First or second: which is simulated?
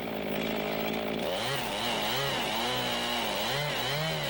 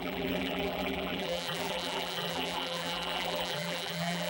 second